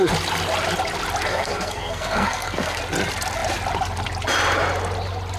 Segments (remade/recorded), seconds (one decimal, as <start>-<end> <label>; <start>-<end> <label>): 0.0-1.3 recorded; 1.3-2.8 remade; 2.8-5.4 recorded